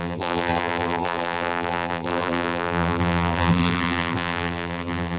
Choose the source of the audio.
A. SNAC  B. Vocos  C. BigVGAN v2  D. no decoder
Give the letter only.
C